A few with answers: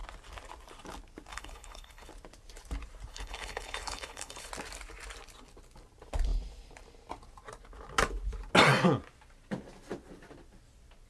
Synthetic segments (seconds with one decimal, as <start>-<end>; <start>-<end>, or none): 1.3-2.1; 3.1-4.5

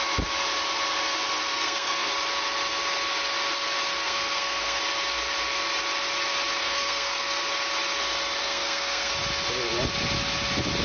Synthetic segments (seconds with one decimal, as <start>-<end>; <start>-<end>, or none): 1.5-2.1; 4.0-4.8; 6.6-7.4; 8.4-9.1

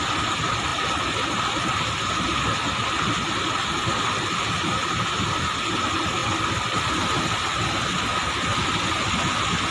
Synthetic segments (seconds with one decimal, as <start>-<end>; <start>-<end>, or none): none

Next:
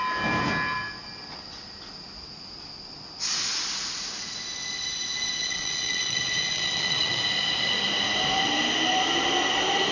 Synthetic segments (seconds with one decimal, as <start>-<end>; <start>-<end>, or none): 5.4-7.2